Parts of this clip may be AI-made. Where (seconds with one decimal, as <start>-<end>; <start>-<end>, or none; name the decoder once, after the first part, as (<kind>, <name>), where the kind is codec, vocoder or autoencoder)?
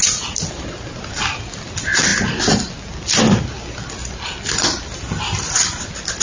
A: none